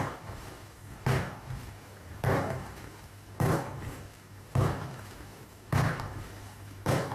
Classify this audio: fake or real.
fake